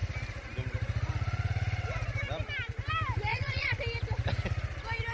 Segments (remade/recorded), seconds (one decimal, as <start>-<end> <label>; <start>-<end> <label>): 0.0-3.3 recorded; 3.3-3.8 remade; 3.8-5.1 recorded